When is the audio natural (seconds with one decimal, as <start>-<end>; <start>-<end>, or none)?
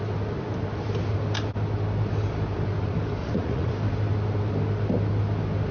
0.0-3.2; 3.7-5.7